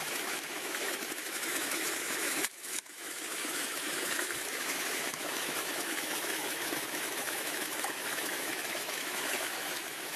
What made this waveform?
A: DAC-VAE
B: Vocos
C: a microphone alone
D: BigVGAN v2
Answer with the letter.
A